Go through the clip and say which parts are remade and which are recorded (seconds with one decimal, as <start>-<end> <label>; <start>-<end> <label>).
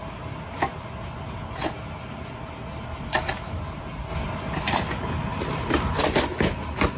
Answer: 0.0-3.1 recorded; 3.1-3.6 remade; 3.6-7.0 recorded